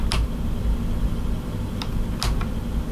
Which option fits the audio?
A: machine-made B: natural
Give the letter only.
B